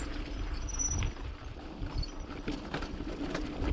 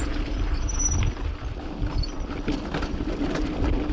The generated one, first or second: first